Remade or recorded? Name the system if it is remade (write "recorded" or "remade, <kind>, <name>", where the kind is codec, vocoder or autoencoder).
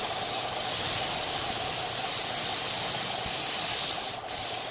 recorded